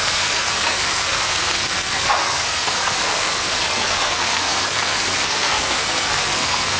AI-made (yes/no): yes